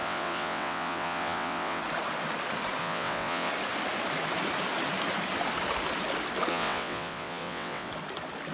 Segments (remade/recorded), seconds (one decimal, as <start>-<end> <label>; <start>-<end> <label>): 0.0-1.8 remade; 1.8-2.8 recorded; 2.8-3.5 remade; 3.5-6.5 recorded; 6.5-7.9 remade; 7.9-8.5 recorded